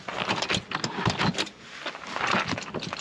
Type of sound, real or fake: real